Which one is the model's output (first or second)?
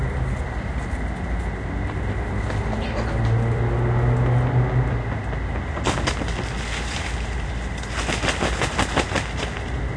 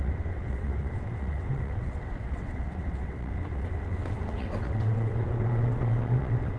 second